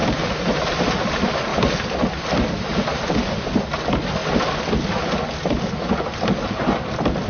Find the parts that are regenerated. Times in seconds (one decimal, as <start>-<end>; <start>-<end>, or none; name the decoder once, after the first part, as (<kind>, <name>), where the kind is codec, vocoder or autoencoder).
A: 0.0-0.9 (vocoder, BigVGAN v2)